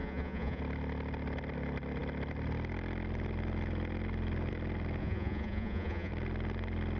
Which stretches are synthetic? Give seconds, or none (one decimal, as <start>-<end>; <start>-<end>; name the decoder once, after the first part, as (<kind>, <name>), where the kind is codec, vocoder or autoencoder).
0.0-0.6 (vocoder, Vocos); 5.0-6.1